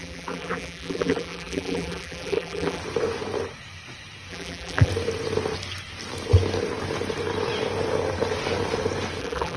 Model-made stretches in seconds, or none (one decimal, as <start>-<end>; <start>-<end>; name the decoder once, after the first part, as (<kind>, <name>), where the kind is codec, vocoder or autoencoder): 0.0-2.8 (vocoder, BigVGAN v2); 4.3-4.9; 9.2-9.6